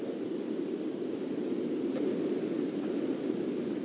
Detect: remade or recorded recorded